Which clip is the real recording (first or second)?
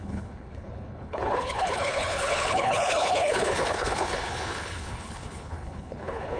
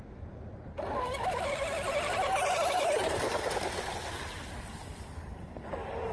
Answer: second